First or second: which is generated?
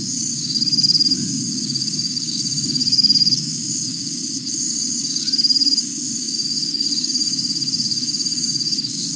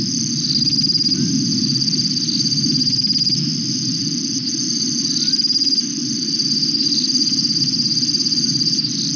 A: first